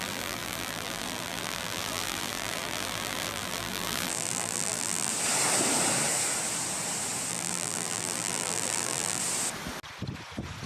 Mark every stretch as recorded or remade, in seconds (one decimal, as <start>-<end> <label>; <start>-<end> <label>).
0.0-5.1 remade; 5.1-7.3 recorded; 7.3-9.2 remade; 9.2-10.7 recorded